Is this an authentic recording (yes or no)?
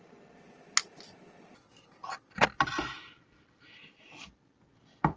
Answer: yes